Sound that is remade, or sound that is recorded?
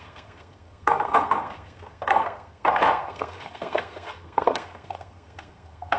remade